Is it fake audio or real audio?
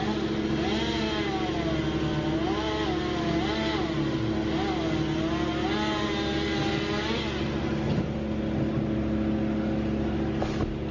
real